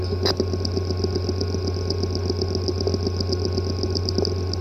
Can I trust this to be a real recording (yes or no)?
yes